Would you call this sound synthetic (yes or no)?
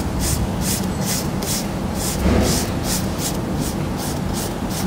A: no